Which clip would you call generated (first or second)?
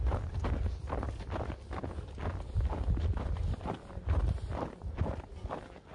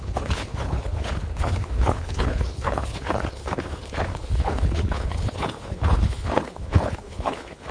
second